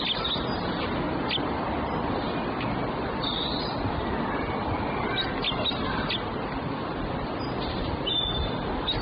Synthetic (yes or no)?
no